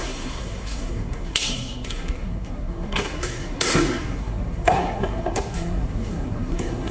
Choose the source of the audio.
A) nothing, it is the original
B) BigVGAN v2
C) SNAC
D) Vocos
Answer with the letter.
C